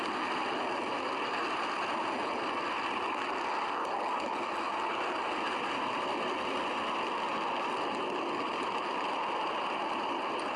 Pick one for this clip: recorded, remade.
recorded